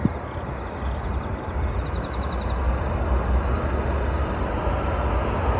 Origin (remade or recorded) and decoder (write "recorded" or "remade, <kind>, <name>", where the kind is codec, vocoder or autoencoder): recorded